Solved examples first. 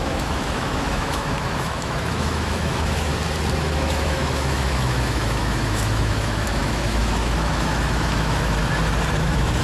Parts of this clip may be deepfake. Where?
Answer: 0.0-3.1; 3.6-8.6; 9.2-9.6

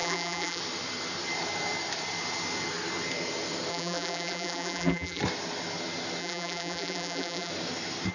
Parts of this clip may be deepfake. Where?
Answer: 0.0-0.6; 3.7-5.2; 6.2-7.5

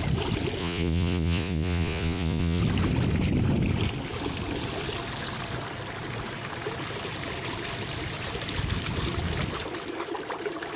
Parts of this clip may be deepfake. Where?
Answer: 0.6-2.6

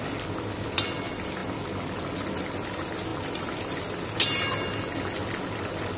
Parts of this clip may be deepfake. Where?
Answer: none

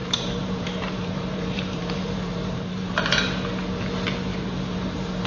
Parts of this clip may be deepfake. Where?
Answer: 0.0-3.2; 4.3-5.3

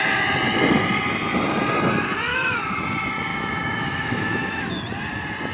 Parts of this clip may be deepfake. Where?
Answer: 2.3-2.8; 3.3-4.7

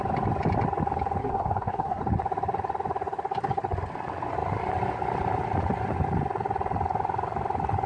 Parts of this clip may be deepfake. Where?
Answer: 1.2-2.0

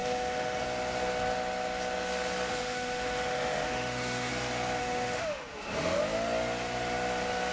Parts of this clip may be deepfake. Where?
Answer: 0.0-0.6; 2.5-4.3; 4.8-6.0